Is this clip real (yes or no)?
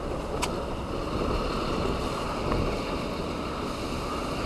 yes